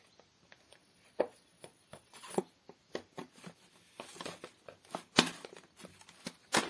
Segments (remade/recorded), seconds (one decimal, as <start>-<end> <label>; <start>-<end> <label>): 0.0-0.8 recorded; 0.8-2.4 remade; 2.4-6.7 recorded